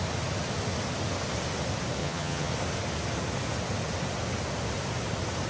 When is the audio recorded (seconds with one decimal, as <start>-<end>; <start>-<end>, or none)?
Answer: 0.0-2.0; 2.5-5.5